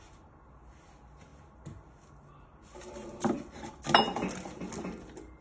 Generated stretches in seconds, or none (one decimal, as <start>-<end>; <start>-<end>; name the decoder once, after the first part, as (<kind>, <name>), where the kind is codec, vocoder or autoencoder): none